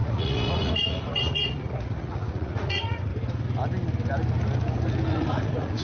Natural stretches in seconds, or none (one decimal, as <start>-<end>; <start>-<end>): 3.1-5.1

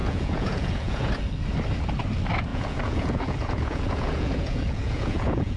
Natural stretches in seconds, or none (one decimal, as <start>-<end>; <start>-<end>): 1.1-2.5

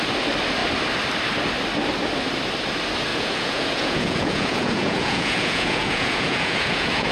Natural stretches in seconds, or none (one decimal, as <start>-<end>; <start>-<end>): 0.0-3.1

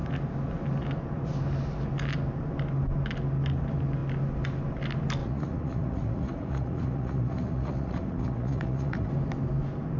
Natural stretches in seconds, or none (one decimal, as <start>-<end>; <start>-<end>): 0.0-5.2; 9.1-10.0